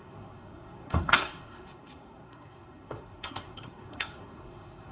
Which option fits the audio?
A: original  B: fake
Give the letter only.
B